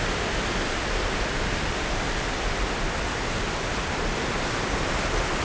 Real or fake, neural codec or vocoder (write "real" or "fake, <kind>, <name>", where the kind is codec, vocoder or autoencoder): real